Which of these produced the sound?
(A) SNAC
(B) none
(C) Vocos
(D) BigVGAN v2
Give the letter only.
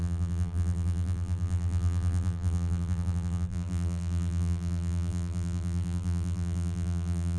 D